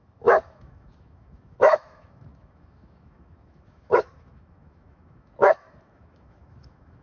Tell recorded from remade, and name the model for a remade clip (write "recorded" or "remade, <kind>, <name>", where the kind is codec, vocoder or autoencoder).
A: remade, autoencoder, DAC-VAE